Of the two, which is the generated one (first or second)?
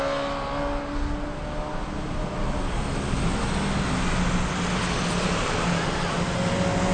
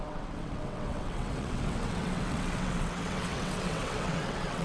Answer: second